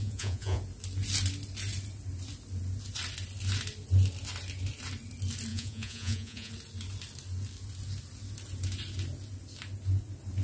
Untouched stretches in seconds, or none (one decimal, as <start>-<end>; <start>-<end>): 0.6-5.5; 6.5-10.4